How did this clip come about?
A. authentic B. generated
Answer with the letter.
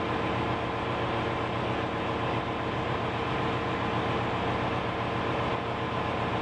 A